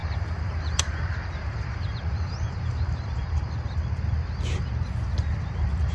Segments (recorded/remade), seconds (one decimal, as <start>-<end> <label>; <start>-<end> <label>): 0.0-3.5 remade; 3.5-5.9 recorded